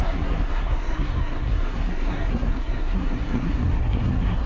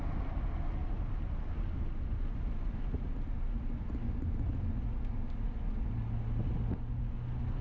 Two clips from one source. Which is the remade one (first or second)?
first